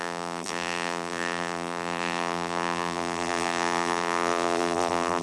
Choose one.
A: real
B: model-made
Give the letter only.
B